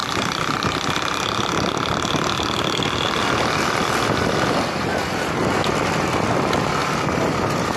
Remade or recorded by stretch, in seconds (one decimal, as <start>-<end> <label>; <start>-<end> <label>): 0.0-3.2 remade; 3.2-4.9 recorded; 4.9-5.5 remade; 5.5-6.8 recorded; 6.8-7.8 remade